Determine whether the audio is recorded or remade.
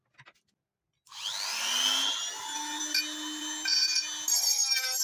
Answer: recorded